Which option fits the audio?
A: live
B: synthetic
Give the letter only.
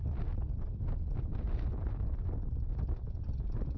A